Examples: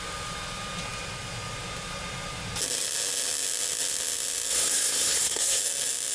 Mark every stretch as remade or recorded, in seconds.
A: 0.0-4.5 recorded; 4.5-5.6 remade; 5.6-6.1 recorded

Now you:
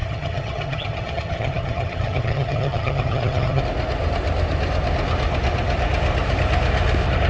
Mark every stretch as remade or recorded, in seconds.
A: 0.0-3.6 remade; 3.6-7.3 recorded

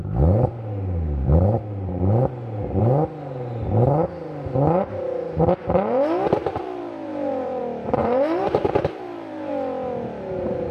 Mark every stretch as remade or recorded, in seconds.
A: 0.0-6.4 recorded; 6.4-7.6 remade; 7.6-8.0 recorded; 8.0-9.5 remade; 9.5-10.7 recorded

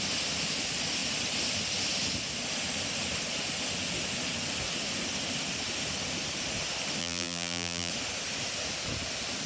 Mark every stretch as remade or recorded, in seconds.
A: 0.0-7.0 recorded; 7.0-7.9 remade; 7.9-9.5 recorded